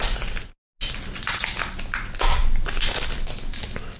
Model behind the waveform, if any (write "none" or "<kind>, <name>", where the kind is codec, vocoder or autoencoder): none